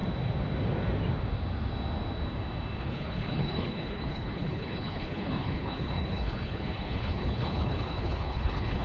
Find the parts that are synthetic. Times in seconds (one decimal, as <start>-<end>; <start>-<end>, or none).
2.8-8.8